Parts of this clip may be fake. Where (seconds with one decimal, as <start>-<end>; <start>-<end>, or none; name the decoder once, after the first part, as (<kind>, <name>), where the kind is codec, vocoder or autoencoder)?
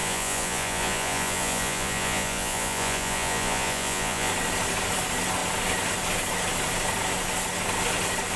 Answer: 0.0-4.3 (vocoder, Vocos)